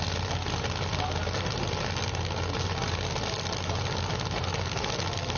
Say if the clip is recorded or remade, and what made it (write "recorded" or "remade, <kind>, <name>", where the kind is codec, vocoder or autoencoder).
recorded